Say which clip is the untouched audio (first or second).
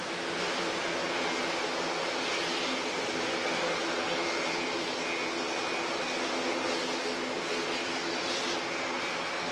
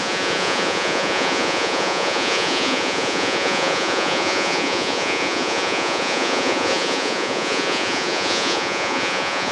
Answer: first